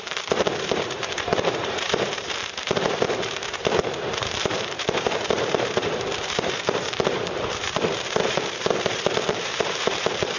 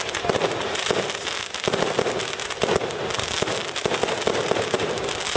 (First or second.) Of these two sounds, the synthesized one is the first